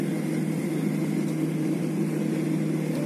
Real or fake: fake